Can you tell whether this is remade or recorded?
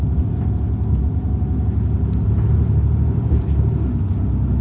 recorded